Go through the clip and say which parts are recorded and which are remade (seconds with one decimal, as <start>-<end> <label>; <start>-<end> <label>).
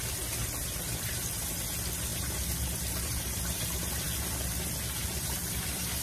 0.0-2.1 recorded; 2.1-6.0 remade